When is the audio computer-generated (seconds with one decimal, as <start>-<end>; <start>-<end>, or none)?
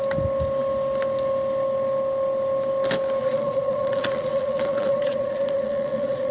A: 3.2-6.3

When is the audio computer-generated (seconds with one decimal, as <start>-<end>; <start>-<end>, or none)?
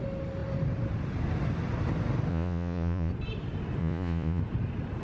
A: 2.3-3.1; 3.8-4.4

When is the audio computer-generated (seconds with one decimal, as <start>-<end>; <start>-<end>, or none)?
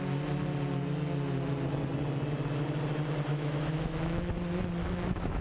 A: 3.3-4.3; 4.8-5.4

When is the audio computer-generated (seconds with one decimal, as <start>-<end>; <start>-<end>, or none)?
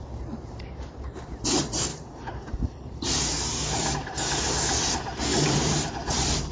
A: 1.9-3.9; 5.3-5.9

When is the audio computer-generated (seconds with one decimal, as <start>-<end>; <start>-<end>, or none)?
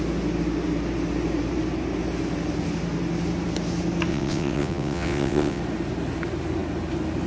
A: 4.1-5.6